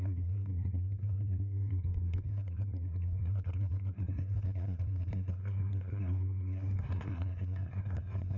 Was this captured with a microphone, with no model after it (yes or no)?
no